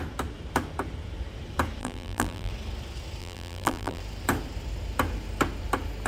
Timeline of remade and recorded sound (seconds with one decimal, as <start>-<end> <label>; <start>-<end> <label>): 0.0-1.8 recorded; 1.8-2.5 remade; 2.5-3.2 recorded; 3.2-4.0 remade; 4.0-6.1 recorded

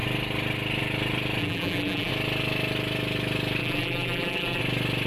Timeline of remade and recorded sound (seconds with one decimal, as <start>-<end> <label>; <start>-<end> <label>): 0.0-1.4 recorded; 1.4-2.1 remade; 2.1-3.6 recorded; 3.6-4.6 remade; 4.6-5.1 recorded